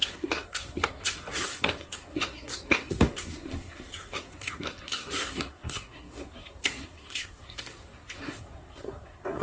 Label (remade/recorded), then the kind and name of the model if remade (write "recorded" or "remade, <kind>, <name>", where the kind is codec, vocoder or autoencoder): remade, codec, SNAC